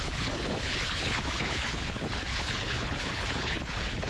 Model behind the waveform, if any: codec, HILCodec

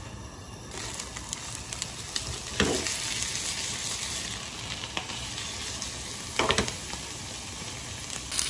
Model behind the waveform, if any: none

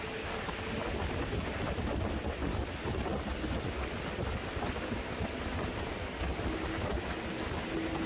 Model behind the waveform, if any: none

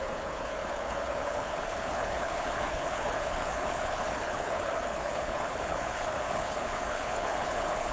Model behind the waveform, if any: codec, HILCodec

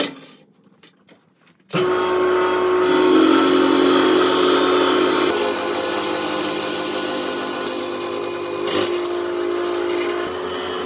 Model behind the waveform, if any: none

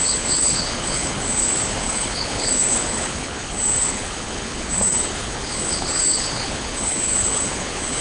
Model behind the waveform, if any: codec, HILCodec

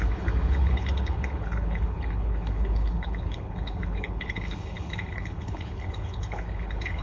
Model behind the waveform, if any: codec, HILCodec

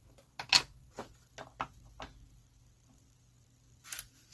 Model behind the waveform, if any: none